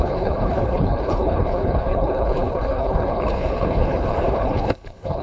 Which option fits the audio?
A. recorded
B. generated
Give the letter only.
B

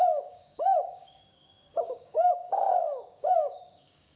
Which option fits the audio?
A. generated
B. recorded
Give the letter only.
A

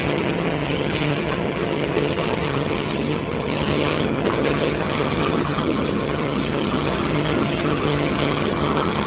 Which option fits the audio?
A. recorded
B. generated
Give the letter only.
B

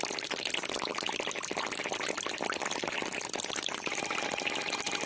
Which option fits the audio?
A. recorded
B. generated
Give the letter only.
A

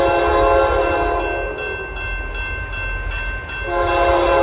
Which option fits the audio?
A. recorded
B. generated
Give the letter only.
A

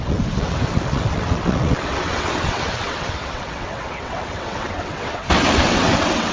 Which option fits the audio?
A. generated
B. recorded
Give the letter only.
A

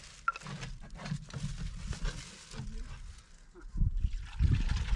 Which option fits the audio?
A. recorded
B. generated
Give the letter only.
A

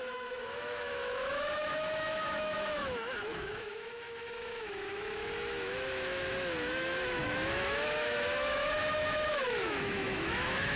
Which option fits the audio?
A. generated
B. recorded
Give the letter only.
A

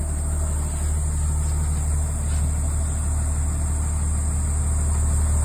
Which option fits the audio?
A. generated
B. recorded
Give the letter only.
B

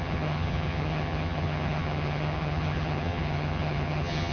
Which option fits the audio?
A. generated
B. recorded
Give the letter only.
A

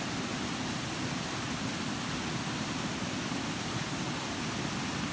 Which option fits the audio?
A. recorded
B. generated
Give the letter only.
A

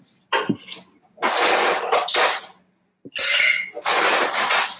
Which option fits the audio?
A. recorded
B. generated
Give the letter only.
A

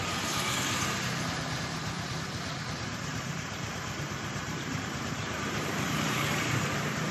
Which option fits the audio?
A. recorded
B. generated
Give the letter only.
B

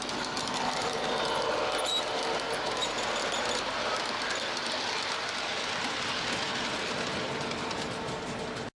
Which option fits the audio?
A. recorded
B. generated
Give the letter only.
A